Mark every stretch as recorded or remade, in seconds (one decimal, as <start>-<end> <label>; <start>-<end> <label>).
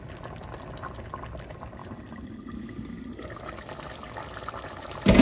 0.0-5.2 recorded